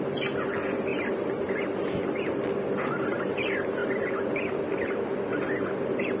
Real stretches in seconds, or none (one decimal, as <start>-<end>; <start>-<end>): 0.9-2.0; 3.8-4.6